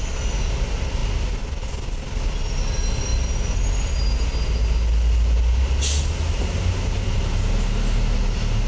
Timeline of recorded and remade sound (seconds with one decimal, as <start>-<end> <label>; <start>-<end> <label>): 0.0-8.7 recorded